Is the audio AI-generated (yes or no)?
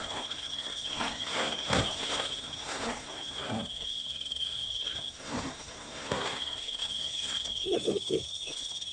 yes